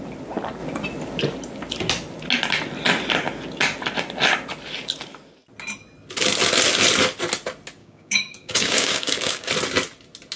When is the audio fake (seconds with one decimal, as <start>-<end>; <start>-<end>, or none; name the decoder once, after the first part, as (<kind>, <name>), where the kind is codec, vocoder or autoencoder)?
7.8-9.5 (codec, DAC)